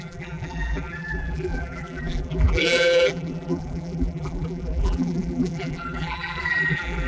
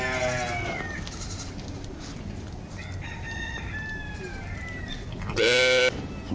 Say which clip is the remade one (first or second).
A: first